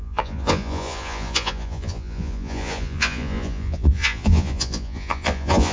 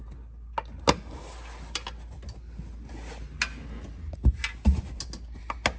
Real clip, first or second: second